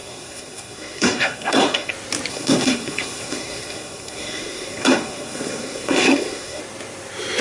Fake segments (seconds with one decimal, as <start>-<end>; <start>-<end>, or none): 0.0-1.9; 2.3-6.6